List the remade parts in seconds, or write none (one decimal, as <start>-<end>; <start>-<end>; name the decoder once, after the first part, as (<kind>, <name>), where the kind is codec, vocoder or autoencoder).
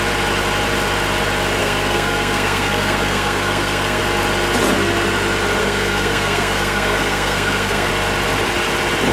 1.6-4.0 (codec, SNAC); 5.6-7.9